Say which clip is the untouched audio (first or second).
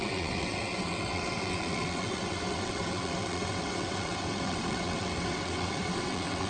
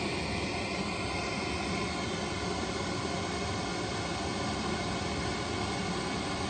second